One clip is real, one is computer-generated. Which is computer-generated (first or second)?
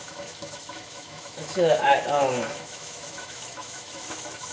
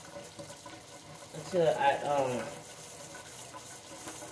first